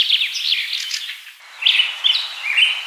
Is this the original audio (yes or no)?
yes